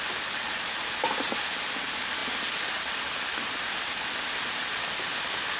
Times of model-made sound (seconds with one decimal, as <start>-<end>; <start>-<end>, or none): none